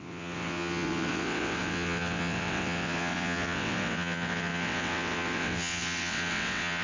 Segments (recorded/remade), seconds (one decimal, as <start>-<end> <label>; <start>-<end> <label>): 0.0-6.8 remade